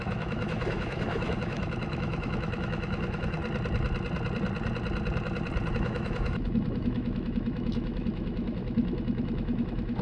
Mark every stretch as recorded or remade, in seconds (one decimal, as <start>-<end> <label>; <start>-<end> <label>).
0.0-3.4 remade; 3.4-5.7 recorded; 5.7-10.0 remade

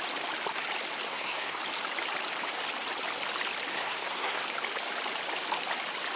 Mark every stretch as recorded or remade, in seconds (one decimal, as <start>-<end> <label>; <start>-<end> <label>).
0.0-1.1 recorded; 1.1-1.6 remade; 1.6-3.7 recorded; 3.7-4.4 remade; 4.4-6.2 recorded

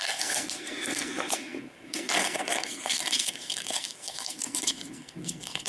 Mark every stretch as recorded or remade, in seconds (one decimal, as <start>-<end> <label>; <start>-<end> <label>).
0.0-5.7 remade

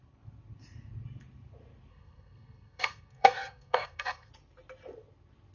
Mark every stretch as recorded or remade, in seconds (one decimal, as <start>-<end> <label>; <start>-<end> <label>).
0.0-1.9 recorded; 1.9-4.3 remade; 4.3-5.5 recorded

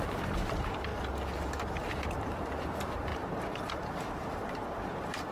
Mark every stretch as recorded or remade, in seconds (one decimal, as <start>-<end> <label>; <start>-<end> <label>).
0.0-0.9 remade; 0.9-2.2 recorded; 2.2-5.3 remade

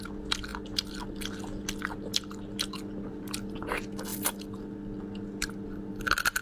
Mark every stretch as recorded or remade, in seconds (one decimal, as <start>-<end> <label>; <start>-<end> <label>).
0.0-6.4 recorded